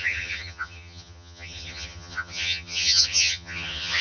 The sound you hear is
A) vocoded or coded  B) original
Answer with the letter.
A